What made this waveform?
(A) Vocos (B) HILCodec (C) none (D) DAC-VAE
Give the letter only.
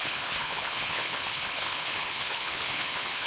B